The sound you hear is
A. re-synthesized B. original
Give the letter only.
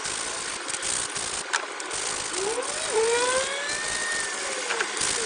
B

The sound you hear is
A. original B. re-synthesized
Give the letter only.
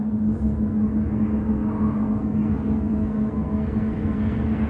B